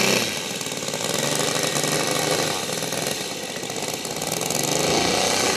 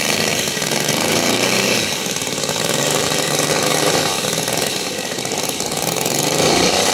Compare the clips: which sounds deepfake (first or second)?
second